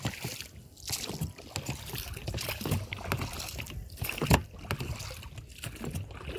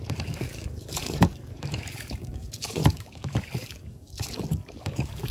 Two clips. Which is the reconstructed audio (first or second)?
second